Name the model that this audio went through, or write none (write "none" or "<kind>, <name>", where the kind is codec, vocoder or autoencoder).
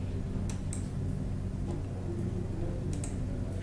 none